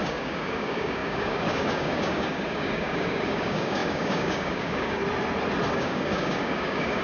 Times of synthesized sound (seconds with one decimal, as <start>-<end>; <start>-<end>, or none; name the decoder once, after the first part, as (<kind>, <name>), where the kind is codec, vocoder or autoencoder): 0.0-5.0 (codec, DAC); 5.7-7.0